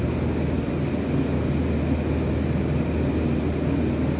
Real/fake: real